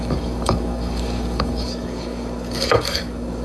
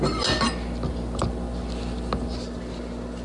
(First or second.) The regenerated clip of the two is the first